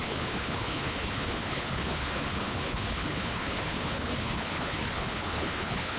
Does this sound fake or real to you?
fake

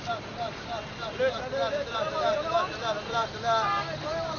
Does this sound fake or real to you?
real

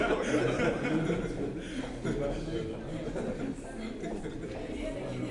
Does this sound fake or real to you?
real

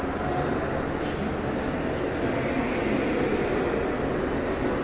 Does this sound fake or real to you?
real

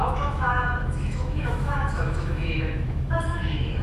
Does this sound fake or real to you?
fake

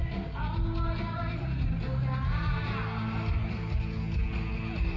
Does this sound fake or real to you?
real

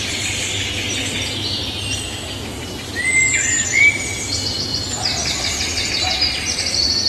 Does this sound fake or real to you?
real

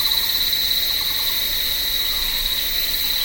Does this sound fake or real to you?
real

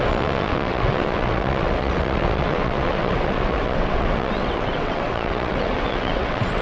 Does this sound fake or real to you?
fake